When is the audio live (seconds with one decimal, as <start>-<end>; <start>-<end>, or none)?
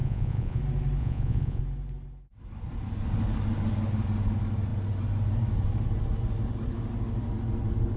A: 0.6-1.0; 1.6-8.0